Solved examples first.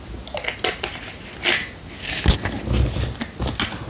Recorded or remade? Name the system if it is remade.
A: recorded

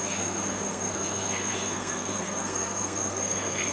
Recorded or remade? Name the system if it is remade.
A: remade, codec, SNAC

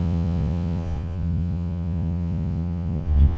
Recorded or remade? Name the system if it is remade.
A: remade, vocoder, Vocos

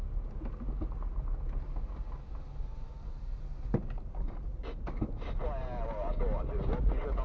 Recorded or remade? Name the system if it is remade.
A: recorded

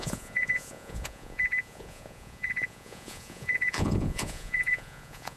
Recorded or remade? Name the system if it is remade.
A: remade, vocoder, Vocos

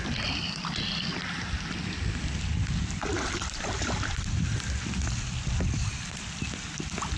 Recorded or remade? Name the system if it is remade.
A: recorded